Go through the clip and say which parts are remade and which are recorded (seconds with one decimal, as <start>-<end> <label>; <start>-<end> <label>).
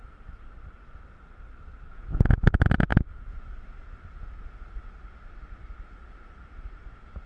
0.0-1.9 recorded; 1.9-2.4 remade; 2.4-7.3 recorded